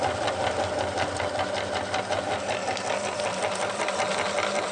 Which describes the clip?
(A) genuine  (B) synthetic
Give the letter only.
A